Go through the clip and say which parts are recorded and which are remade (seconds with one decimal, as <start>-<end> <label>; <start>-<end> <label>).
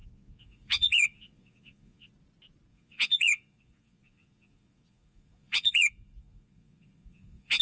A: 0.0-2.1 remade; 2.1-2.7 recorded; 2.7-7.6 remade